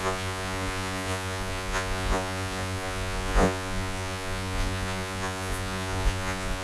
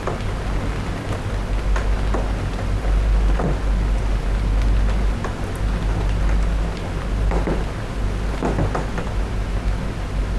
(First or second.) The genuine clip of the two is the second